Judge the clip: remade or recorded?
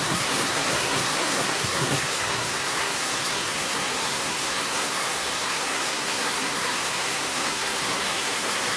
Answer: remade